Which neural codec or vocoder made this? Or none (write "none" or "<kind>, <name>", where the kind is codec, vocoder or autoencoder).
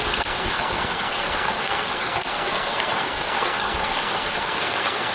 codec, SNAC